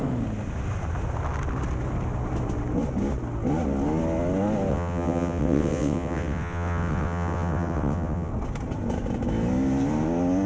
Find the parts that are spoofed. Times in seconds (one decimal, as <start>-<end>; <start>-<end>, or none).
4.7-8.3